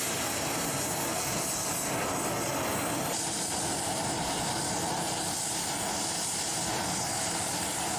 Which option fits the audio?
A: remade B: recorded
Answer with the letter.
B